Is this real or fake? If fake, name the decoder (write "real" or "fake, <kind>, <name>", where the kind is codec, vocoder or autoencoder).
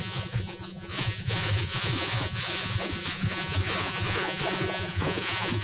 fake, vocoder, Vocos